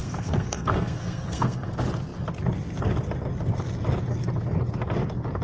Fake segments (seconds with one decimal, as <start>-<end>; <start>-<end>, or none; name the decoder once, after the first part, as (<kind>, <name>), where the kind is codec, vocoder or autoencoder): 0.0-1.7 (codec, SNAC)